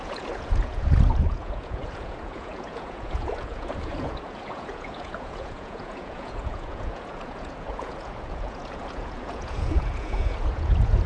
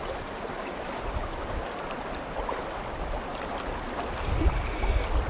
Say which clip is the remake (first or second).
first